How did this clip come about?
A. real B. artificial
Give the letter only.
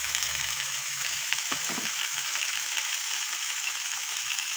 B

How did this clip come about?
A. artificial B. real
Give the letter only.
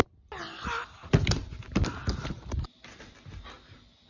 B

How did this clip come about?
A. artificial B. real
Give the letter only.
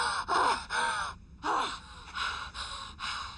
B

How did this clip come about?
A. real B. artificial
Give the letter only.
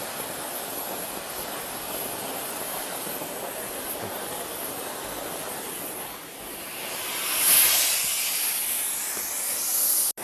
A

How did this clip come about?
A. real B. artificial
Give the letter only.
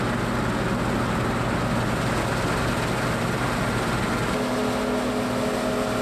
A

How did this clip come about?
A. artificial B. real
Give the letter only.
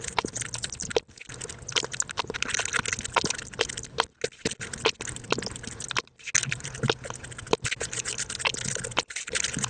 B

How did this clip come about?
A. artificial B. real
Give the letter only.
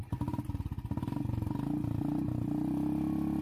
B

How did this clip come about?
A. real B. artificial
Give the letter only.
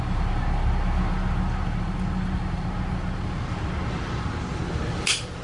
A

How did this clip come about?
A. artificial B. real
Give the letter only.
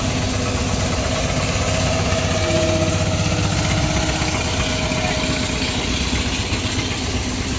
B